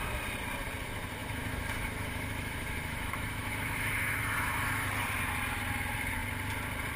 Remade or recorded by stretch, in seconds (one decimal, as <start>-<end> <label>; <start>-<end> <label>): 0.0-1.2 recorded; 1.2-4.9 remade; 4.9-7.0 recorded